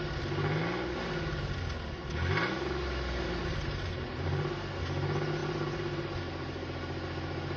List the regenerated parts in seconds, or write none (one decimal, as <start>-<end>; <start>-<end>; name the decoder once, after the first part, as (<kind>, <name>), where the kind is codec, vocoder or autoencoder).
3.4-4.3 (vocoder, BigVGAN v2); 5.4-6.2